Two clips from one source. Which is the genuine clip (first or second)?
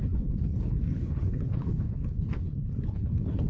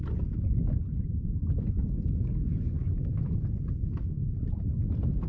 second